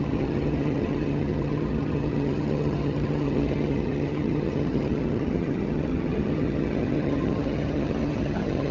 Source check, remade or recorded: remade